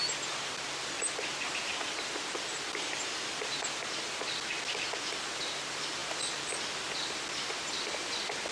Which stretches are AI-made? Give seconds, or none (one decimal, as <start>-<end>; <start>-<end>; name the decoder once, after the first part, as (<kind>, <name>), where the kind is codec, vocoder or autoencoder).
none